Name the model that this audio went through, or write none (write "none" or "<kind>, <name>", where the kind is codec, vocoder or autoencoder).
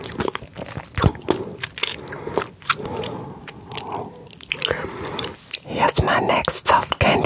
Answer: none